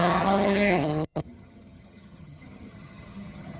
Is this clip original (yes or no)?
no